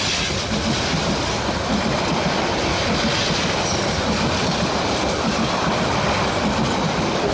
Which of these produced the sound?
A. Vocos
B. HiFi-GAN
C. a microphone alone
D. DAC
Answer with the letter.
C